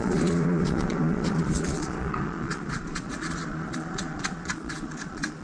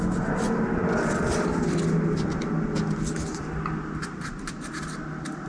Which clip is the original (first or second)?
second